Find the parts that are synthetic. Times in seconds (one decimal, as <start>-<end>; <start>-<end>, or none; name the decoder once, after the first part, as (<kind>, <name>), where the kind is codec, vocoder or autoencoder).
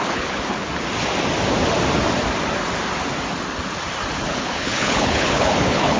0.0-0.7 (codec, HILCodec); 4.3-6.0